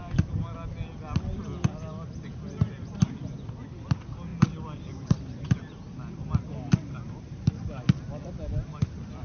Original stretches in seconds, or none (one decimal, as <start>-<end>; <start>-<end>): 0.0-9.2